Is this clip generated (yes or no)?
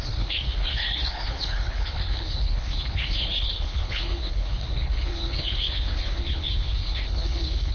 yes